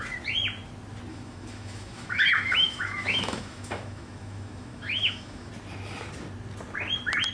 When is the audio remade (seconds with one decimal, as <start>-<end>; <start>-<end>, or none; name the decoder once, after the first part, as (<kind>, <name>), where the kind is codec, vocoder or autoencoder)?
1.1-5.5 (autoencoder, DAC-VAE)